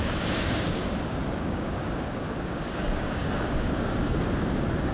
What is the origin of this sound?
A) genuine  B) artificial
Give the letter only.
B